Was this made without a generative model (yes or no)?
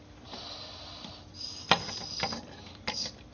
yes